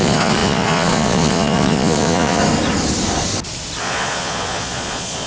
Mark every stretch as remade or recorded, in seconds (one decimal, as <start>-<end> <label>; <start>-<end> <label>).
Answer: 0.0-2.4 remade; 2.4-3.8 recorded; 3.8-5.3 remade